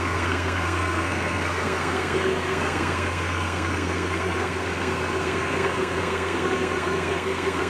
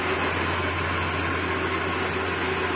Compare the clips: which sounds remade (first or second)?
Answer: first